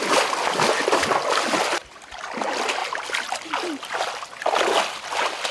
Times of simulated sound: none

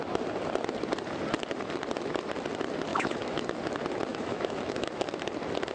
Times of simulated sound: 2.9-3.4 (autoencoder, DAC-VAE); 4.1-4.9

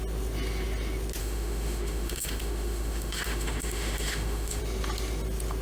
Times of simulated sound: 1.2-4.6 (autoencoder, DAC-VAE)